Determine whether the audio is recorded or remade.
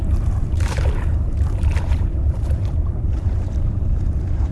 remade